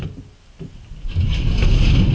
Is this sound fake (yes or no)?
no